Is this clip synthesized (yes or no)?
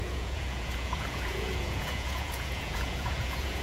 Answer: yes